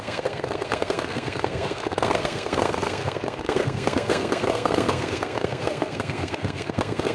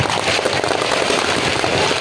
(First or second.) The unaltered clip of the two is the second